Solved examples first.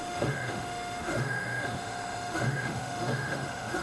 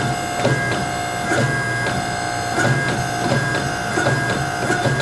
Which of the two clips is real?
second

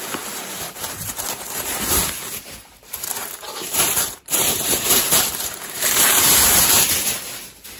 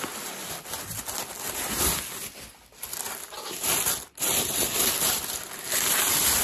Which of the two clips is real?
second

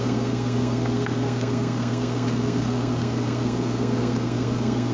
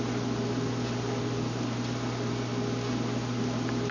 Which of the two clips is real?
second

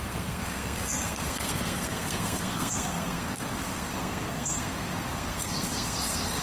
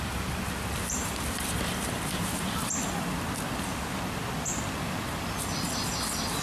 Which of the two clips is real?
second